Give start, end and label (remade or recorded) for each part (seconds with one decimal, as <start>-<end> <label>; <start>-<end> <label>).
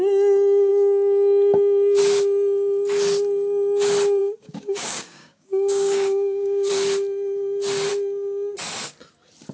0.0-4.2 recorded; 4.2-6.7 remade; 6.7-9.5 recorded